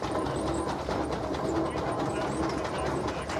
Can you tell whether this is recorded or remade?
recorded